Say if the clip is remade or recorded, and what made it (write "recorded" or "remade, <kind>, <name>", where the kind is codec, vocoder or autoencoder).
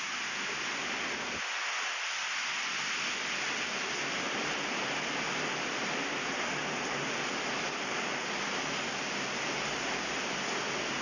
recorded